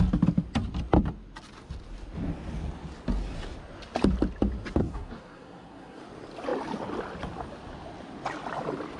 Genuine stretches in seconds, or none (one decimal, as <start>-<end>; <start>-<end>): 0.0-4.8; 6.0-9.0